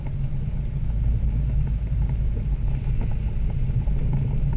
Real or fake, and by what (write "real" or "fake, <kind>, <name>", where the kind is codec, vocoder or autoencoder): real